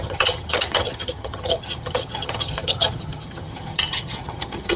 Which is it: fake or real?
fake